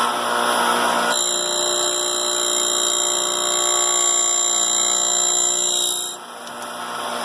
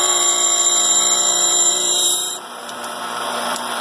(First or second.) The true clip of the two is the first